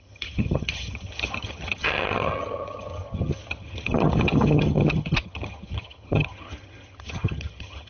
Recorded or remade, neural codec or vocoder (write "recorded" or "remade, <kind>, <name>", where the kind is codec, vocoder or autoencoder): remade, vocoder, HiFi-GAN